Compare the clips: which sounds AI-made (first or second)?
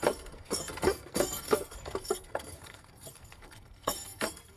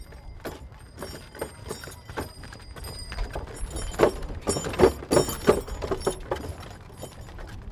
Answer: first